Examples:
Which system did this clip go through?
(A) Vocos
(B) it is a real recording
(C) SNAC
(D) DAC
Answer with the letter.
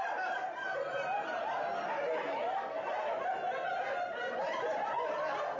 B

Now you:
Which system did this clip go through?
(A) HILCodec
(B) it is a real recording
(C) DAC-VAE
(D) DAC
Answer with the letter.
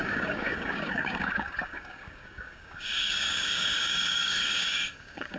D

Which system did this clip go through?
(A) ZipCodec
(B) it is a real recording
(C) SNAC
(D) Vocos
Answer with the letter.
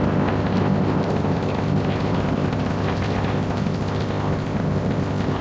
A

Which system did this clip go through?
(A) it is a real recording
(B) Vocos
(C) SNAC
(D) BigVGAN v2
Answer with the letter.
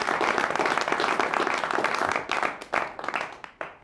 A